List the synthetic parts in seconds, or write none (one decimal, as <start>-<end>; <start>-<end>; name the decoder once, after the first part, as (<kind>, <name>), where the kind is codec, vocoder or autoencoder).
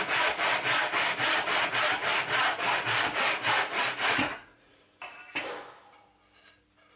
4.0-4.8 (vocoder, Vocos)